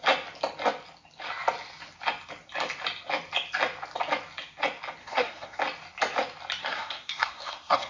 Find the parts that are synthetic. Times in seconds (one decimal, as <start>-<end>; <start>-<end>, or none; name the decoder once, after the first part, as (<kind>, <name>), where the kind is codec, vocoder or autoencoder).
5.0-5.6 (codec, SNAC); 6.6-7.9